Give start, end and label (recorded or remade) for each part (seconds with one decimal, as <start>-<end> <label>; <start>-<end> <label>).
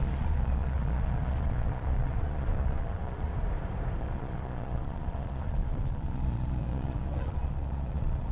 0.0-3.3 remade; 3.3-4.0 recorded; 4.0-8.3 remade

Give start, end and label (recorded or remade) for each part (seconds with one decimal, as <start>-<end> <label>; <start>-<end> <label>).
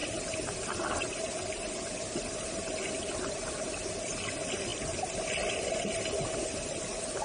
0.0-7.2 recorded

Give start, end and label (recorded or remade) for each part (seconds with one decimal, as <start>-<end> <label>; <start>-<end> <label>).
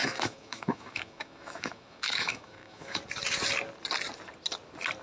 0.0-3.0 remade; 3.0-5.0 recorded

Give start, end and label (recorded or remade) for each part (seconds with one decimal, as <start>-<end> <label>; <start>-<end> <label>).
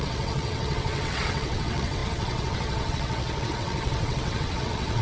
0.0-5.0 remade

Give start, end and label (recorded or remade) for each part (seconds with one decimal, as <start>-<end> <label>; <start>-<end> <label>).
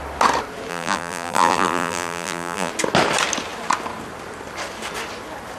0.0-0.7 recorded; 0.7-2.7 remade; 2.7-5.6 recorded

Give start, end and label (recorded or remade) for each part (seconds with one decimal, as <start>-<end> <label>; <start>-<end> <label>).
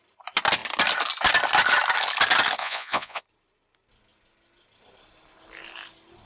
0.0-2.6 recorded; 2.6-3.2 remade; 3.2-6.3 recorded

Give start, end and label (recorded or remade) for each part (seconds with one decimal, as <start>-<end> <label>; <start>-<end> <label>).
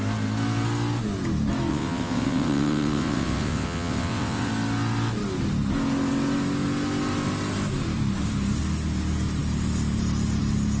0.0-1.7 recorded; 1.7-4.5 remade; 4.5-10.8 recorded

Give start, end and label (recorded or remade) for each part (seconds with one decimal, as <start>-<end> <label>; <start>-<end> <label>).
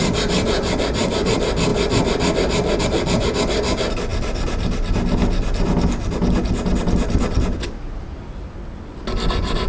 0.0-9.7 recorded